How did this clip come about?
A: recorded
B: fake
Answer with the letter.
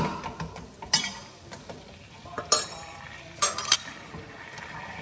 A